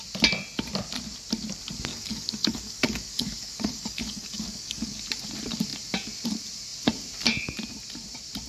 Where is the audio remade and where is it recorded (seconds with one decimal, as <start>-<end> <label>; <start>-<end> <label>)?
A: 0.0-1.9 recorded; 1.9-5.0 remade; 5.0-8.5 recorded